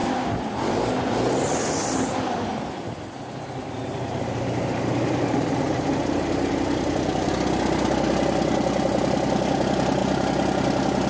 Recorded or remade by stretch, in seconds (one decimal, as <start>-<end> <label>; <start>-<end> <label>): 0.0-3.8 recorded; 3.8-7.3 remade; 7.3-11.1 recorded